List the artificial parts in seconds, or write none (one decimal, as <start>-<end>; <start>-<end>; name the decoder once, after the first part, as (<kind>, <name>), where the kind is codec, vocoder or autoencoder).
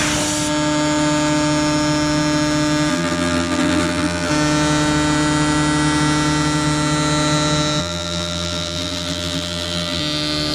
2.9-4.3 (vocoder, BigVGAN v2); 7.8-10.0